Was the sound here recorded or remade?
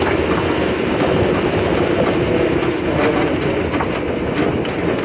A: recorded